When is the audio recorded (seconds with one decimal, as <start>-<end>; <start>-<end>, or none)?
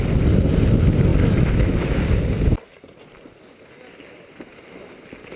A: 0.0-5.4